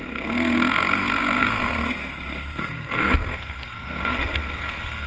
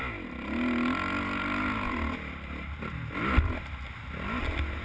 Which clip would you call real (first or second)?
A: second